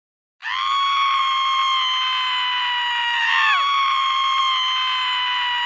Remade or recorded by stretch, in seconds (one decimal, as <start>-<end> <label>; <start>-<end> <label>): 0.0-0.4 recorded; 0.4-1.2 remade; 1.2-3.0 recorded; 3.0-4.4 remade; 4.4-5.7 recorded